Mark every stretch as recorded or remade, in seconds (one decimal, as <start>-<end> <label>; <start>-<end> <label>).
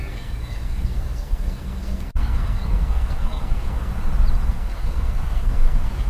0.0-3.9 remade; 3.9-4.5 recorded; 4.5-6.1 remade